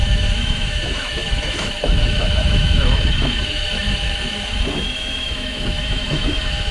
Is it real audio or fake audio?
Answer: fake